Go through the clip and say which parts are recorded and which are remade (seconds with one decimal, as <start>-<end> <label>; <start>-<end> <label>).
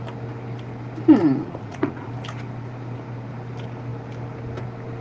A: 0.0-1.2 recorded; 1.2-2.1 remade; 2.1-5.0 recorded